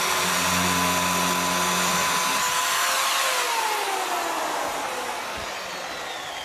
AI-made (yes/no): no